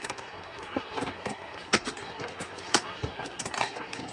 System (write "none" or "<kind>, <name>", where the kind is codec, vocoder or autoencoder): codec, SNAC